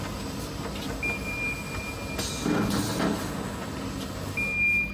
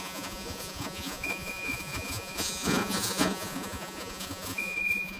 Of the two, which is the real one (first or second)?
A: first